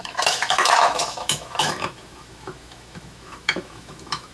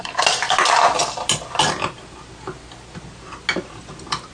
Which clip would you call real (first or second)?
second